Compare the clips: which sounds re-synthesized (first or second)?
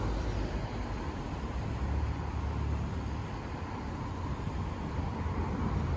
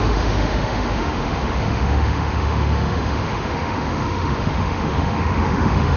second